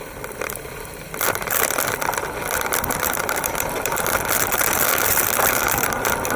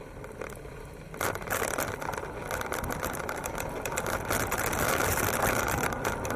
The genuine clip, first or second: second